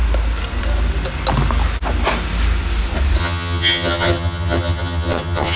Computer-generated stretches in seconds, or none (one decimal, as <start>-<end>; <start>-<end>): 3.2-5.6